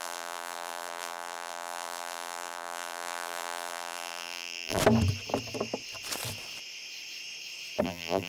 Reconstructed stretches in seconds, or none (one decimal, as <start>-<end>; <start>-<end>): 0.0-4.8; 7.8-8.3